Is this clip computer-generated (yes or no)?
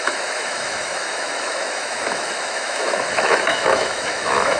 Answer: yes